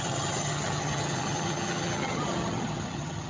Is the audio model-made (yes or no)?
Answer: yes